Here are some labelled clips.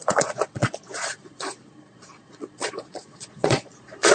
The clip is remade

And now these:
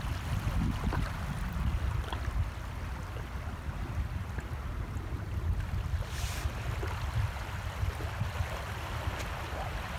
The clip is recorded